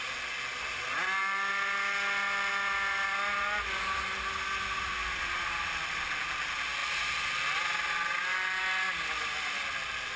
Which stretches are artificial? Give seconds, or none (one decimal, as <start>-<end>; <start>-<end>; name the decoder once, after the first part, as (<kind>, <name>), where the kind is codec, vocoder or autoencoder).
none